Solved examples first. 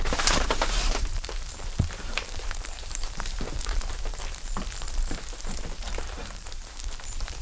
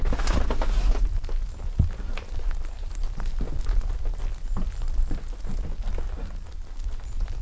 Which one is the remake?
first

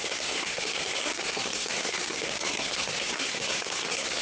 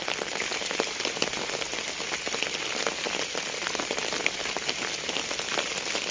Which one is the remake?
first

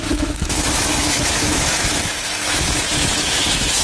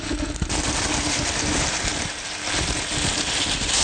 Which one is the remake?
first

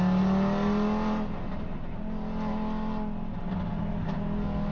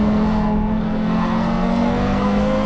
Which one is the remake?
second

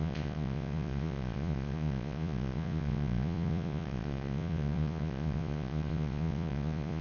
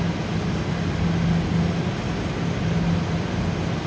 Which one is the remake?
first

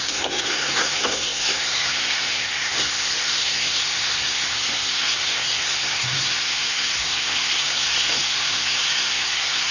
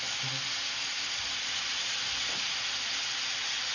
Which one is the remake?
first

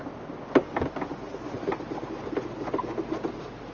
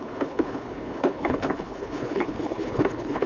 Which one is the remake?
second